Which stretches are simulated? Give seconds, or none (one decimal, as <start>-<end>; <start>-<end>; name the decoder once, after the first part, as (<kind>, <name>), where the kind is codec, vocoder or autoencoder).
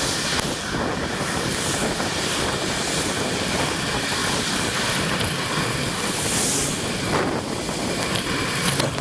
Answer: none